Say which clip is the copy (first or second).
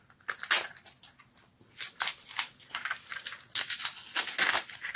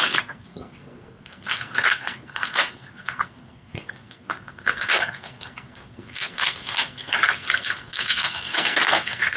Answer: second